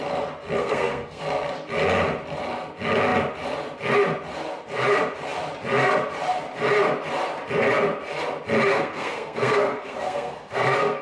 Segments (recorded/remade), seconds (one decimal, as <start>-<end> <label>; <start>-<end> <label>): 0.0-0.6 recorded; 0.6-1.2 remade; 1.2-8.7 recorded; 8.7-11.0 remade